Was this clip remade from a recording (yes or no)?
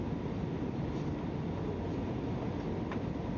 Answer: no